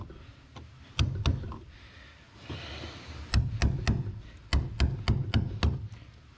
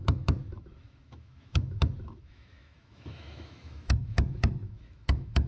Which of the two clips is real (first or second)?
first